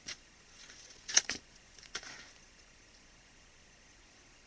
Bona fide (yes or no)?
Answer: no